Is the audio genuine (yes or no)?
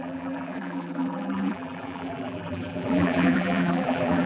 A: no